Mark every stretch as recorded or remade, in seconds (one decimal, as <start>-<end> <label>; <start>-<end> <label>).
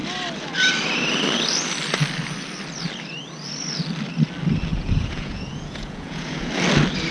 0.0-4.7 recorded; 4.7-6.5 remade; 6.5-7.1 recorded